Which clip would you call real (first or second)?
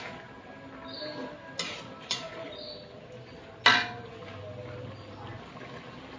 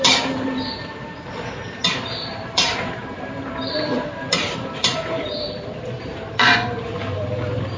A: first